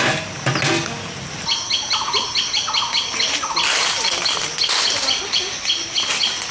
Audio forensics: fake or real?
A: real